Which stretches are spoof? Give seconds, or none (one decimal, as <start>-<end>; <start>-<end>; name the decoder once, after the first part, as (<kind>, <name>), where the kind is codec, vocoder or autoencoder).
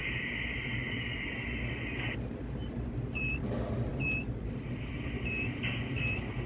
none